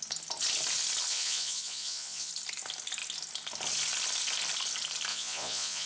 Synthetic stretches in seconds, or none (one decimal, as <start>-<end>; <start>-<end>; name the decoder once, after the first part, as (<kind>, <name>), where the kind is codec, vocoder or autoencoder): 1.1-2.3 (vocoder, Vocos); 5.1-5.9